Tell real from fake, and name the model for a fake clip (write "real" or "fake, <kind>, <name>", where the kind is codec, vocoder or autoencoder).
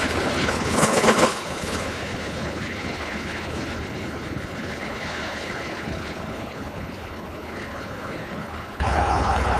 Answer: fake, codec, HILCodec